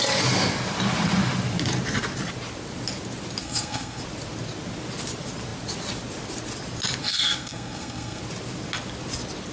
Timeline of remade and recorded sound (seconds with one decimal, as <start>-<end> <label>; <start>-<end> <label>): 0.0-3.4 recorded; 3.4-4.0 remade; 4.0-7.0 recorded; 7.0-8.2 remade; 8.2-9.5 recorded